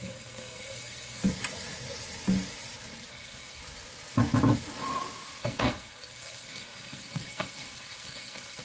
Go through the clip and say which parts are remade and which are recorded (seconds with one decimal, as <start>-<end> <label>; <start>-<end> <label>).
0.0-1.2 remade; 1.2-3.1 recorded; 3.1-3.6 remade; 3.6-5.4 recorded; 5.4-8.6 remade

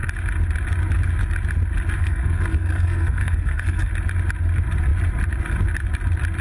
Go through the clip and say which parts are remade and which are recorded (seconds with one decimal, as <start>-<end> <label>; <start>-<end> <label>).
0.0-2.0 recorded; 2.0-3.9 remade; 3.9-6.4 recorded